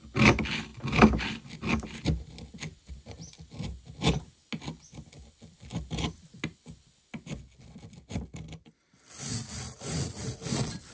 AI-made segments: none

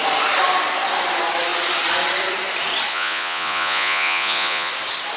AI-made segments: 2.9-4.7 (vocoder, Vocos)

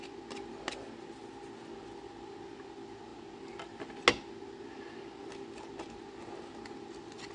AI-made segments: none

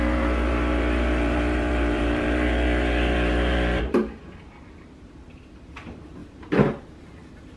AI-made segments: 0.0-4.0 (vocoder, BigVGAN v2); 5.7-6.2